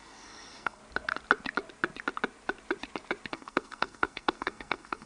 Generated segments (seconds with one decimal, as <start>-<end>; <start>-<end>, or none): 0.0-0.8; 3.3-5.1